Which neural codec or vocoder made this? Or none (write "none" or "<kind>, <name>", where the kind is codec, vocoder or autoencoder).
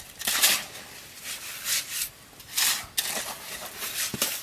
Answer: none